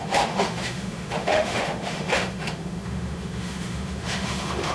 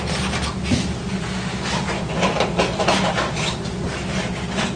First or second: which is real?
second